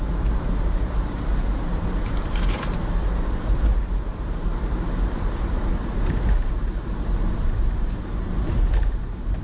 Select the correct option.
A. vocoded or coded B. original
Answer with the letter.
A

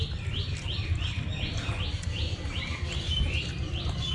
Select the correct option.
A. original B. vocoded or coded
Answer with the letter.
A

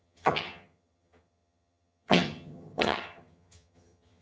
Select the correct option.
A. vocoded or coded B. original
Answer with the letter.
A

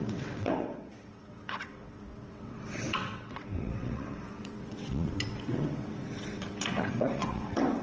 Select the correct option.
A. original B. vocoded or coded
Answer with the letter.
B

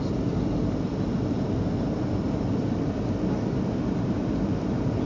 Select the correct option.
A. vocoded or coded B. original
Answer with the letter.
B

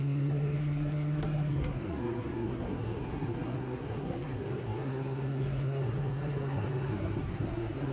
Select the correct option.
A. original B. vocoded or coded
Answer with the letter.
B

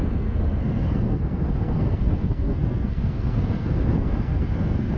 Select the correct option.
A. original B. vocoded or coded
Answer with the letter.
B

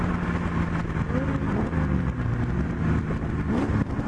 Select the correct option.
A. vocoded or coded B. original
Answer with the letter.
B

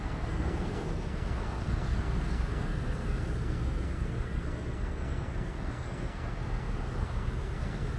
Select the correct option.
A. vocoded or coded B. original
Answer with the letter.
A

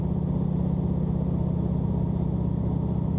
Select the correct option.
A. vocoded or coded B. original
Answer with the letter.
B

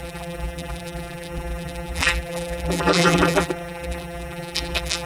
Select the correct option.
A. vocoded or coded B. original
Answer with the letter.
A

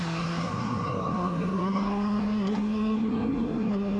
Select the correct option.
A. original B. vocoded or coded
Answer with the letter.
B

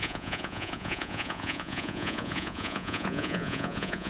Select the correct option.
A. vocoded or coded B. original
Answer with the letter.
A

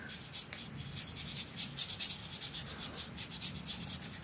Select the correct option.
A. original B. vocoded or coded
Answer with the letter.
A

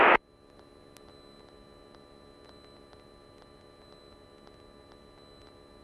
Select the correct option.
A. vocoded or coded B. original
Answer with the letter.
B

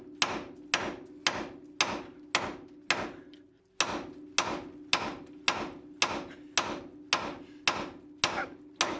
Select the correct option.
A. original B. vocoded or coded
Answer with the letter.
A